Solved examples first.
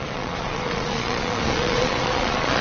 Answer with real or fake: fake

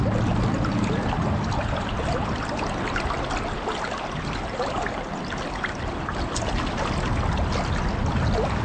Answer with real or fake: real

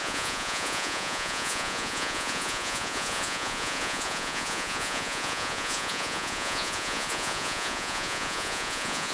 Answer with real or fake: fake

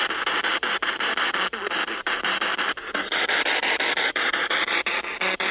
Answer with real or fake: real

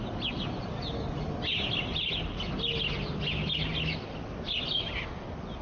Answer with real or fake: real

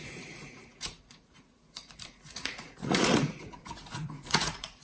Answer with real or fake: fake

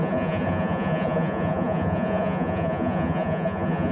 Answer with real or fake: fake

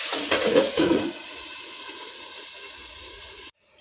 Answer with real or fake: fake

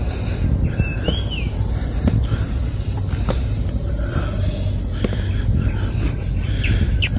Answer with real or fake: real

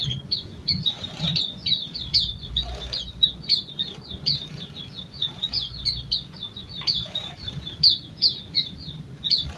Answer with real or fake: fake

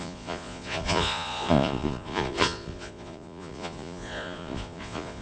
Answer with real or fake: fake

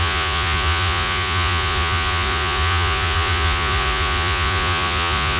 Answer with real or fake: fake